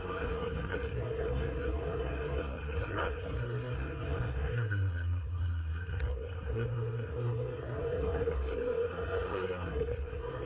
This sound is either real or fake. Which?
fake